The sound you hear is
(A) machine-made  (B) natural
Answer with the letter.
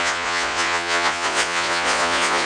A